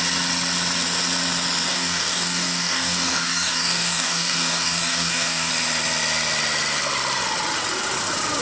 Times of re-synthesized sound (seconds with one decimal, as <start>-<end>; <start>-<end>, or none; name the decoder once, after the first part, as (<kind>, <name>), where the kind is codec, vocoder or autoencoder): 1.7-5.5 (codec, DAC)

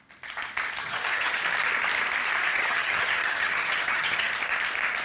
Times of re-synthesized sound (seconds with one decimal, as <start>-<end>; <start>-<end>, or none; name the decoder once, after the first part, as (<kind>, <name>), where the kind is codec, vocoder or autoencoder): 0.8-1.4 (vocoder, HiFi-GAN); 2.5-4.3

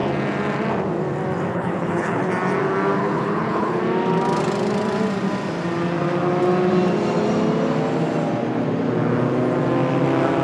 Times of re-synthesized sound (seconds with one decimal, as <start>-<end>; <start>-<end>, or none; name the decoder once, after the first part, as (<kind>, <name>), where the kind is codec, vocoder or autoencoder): 1.5-2.3 (codec, HILCodec); 3.0-3.8

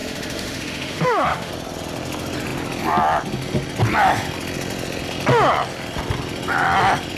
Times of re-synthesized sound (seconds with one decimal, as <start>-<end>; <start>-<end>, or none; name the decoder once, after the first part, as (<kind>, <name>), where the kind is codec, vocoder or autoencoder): 0.0-1.5 (autoencoder, DAC-VAE)

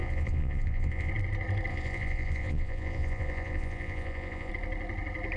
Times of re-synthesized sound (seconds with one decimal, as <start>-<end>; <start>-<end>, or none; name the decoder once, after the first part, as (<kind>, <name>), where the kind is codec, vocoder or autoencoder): 0.0-1.1 (vocoder, Vocos); 1.7-4.5

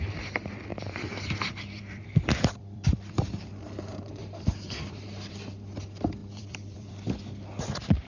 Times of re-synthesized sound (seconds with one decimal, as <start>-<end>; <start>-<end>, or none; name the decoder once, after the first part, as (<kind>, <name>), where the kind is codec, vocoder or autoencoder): 0.7-3.8 (vocoder, BigVGAN v2); 4.2-5.3; 6.2-7.3